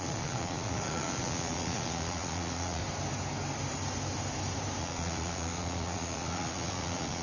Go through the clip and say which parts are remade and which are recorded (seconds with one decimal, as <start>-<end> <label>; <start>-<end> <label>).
0.0-2.8 remade; 2.8-4.8 recorded; 4.8-7.2 remade